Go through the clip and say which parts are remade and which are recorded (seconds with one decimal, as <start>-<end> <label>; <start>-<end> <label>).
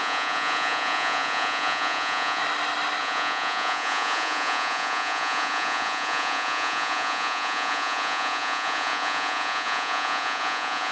0.0-2.4 remade; 2.4-3.0 recorded; 3.0-10.9 remade